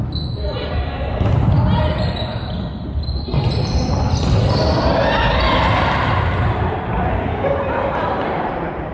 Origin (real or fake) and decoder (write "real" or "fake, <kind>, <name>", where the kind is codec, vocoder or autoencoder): real